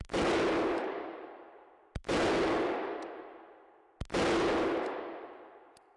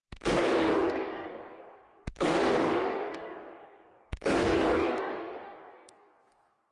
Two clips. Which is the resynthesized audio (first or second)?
second